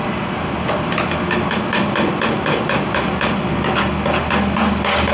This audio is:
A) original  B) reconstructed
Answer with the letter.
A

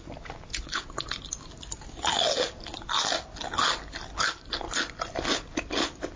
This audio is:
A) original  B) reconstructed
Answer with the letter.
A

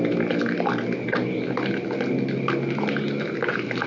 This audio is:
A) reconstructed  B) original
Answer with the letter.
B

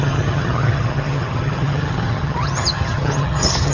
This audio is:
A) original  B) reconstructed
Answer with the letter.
B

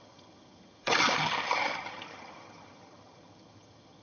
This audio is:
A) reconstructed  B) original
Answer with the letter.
A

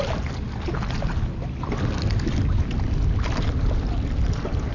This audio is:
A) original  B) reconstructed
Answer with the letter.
A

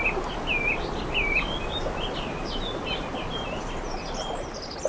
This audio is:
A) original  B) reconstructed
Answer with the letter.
A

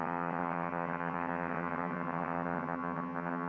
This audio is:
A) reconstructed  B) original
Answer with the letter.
A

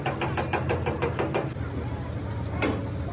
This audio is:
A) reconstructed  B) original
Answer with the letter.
B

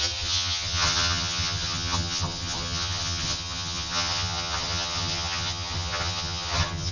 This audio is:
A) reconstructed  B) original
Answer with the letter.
A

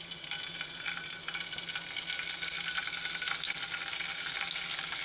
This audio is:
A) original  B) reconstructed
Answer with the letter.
A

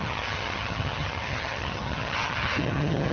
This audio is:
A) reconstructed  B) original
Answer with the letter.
A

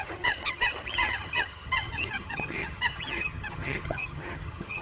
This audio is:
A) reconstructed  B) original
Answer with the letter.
A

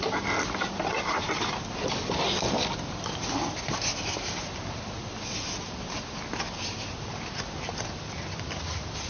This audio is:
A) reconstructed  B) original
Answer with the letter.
B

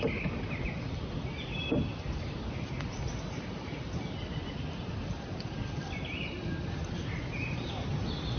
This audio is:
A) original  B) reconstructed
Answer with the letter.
A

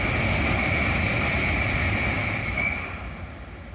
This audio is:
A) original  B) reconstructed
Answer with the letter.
A